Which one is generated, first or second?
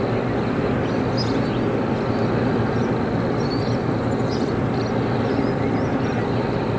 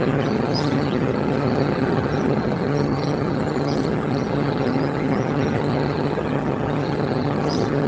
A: second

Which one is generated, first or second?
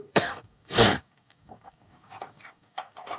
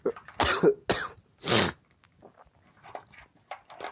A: first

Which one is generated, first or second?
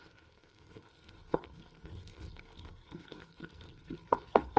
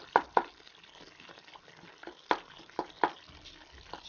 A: first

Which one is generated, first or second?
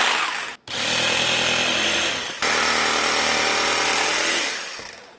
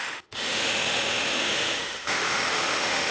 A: second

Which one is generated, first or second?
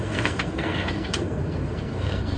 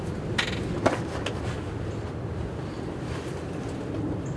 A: first